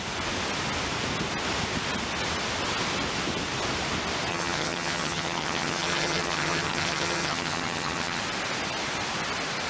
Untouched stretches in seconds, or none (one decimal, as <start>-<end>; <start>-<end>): 0.0-4.3; 8.2-9.7